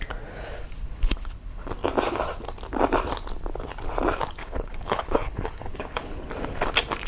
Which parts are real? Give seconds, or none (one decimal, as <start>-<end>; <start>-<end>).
0.0-0.8; 1.7-4.4; 6.3-7.1